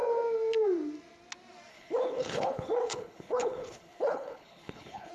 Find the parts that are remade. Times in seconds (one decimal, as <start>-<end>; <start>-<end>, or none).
1.7-5.1